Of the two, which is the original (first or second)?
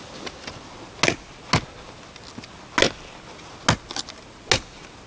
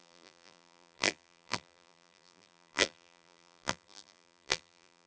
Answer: first